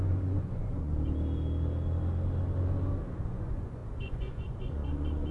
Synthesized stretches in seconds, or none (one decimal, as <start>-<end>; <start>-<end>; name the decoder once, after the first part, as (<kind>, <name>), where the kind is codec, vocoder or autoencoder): 0.0-0.9 (vocoder, Vocos); 3.1-5.3